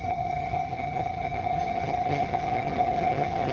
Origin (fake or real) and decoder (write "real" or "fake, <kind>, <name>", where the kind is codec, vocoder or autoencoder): fake, vocoder, HiFi-GAN